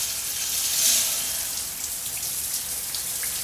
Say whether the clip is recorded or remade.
recorded